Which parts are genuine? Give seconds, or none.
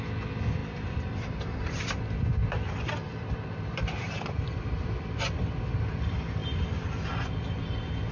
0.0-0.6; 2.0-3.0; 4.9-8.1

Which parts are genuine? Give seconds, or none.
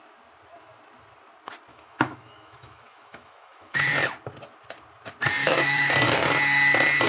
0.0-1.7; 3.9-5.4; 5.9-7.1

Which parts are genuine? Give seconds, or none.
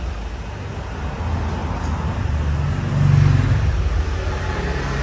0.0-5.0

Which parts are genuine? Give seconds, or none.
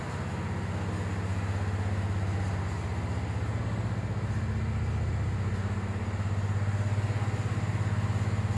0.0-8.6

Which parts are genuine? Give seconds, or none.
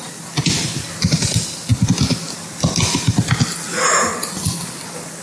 0.0-5.2